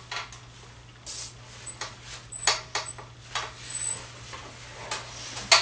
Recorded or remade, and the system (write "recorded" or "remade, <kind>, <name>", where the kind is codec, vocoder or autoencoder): recorded